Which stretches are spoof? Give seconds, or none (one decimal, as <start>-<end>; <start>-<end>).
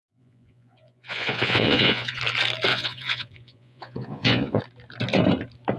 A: 0.0-2.2; 2.7-4.6